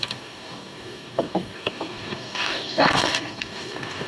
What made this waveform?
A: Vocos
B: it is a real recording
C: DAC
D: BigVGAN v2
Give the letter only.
C